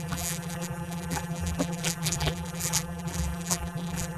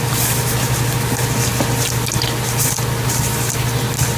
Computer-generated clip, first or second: first